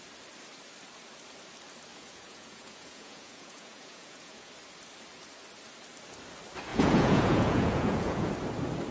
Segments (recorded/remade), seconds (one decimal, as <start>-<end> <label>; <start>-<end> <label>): 0.0-1.9 recorded; 1.9-4.5 remade; 4.5-6.7 recorded; 6.7-8.3 remade; 8.3-8.9 recorded